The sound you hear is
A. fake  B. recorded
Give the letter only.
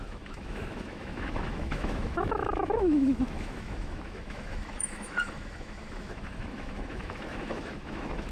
A